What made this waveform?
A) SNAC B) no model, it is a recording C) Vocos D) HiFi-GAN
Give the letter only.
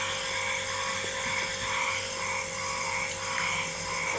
B